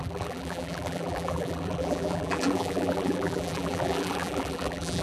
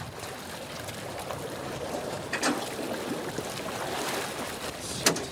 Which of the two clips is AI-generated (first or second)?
first